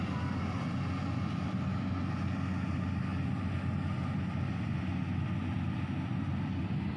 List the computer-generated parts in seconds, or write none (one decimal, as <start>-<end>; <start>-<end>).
none